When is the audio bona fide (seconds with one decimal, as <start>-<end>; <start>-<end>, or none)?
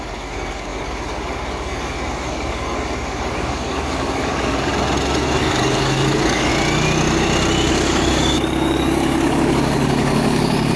4.7-5.4; 6.5-7.7